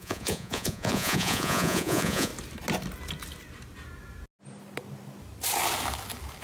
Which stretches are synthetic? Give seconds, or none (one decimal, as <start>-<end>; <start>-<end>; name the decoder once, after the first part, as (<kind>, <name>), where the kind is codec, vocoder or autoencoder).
0.0-2.3 (vocoder, Vocos)